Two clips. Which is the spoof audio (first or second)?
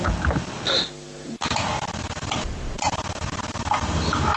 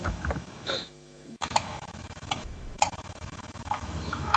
second